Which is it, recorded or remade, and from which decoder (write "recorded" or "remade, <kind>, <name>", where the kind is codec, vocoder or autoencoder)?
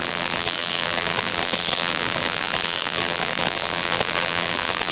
remade, vocoder, BigVGAN v2